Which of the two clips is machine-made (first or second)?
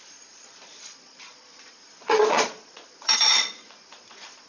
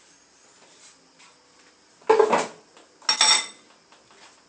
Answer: first